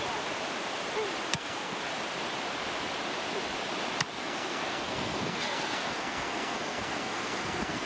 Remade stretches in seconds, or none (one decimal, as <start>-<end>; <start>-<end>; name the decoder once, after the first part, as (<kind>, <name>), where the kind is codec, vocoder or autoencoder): 1.3-1.8 (codec, SNAC); 4.2-7.9